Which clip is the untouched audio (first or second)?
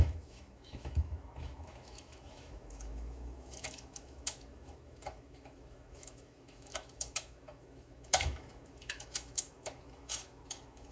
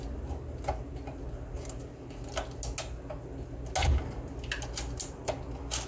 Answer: second